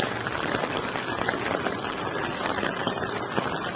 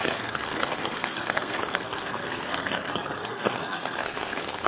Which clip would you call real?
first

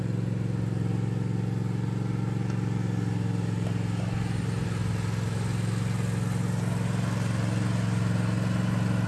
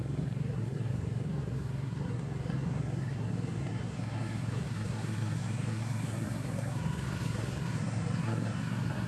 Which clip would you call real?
first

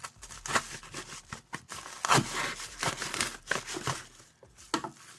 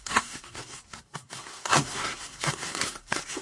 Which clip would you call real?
first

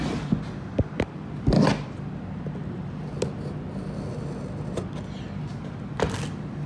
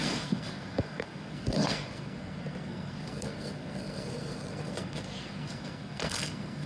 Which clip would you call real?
first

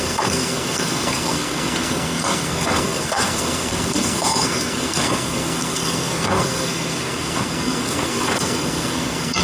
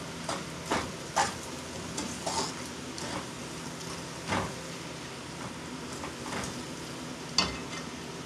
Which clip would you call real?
second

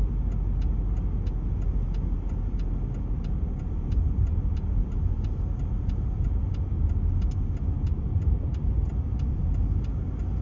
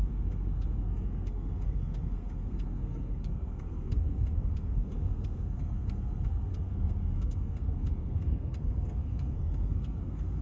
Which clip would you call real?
first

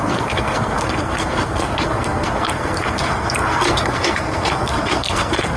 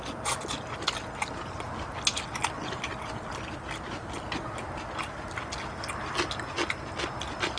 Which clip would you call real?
second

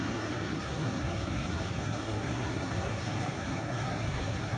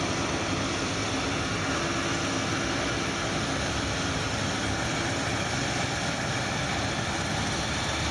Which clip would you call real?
second